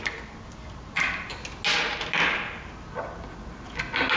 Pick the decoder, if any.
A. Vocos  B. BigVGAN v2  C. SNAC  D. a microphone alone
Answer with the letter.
D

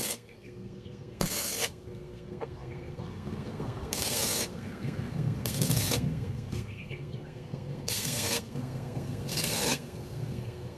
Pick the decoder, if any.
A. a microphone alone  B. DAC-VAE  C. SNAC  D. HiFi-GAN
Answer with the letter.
C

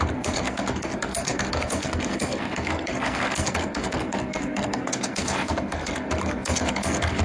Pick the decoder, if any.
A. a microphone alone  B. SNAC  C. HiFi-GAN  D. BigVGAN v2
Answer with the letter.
B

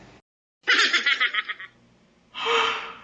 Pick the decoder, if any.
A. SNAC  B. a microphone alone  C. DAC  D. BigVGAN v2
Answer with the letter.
B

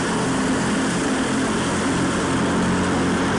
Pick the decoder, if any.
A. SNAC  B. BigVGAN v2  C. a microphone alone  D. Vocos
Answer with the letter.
C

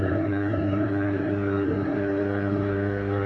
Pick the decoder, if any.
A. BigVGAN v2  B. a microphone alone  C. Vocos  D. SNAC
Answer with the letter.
D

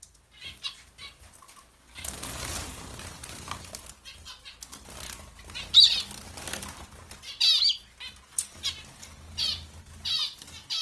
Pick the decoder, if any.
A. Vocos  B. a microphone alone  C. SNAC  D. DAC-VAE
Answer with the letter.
B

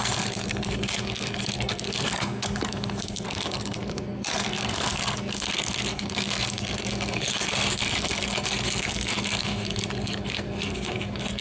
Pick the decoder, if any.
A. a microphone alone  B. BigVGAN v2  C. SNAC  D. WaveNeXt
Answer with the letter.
C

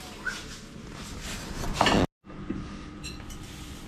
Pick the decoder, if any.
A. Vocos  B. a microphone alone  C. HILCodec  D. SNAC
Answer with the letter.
B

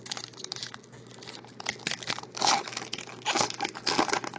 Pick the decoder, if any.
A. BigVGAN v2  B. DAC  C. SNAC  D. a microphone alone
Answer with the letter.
D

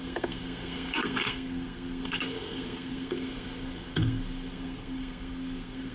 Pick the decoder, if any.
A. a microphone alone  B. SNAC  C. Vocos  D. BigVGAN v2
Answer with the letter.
B